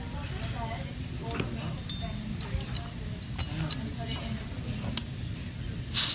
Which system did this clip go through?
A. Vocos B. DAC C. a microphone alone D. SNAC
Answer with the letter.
C